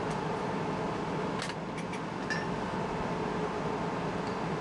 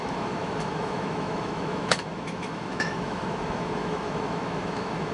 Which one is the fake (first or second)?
second